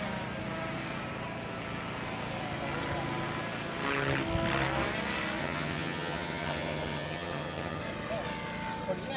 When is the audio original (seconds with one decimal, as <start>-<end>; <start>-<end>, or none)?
0.0-5.4; 7.8-9.2